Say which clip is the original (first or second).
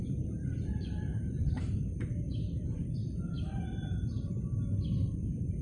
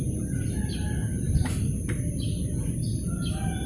second